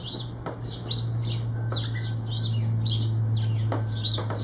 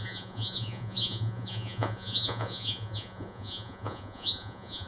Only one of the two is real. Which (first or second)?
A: first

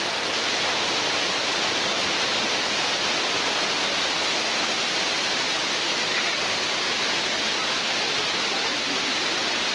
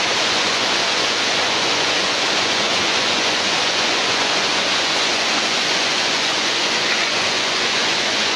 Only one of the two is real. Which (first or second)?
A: first